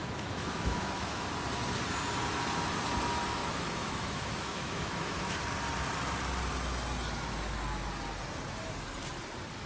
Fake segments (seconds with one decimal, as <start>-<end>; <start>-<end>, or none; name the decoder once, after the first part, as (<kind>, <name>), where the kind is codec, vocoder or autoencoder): 0.0-1.3 (autoencoder, DAC-VAE); 3.4-5.4